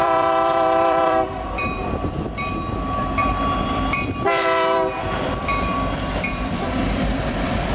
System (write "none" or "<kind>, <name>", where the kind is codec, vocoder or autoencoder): vocoder, BigVGAN v2